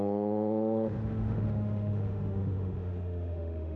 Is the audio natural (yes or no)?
no